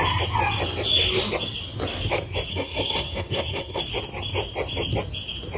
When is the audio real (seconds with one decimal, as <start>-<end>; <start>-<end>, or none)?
0.0-2.5; 3.8-5.6